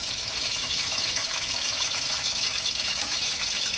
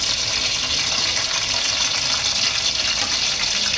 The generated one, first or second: first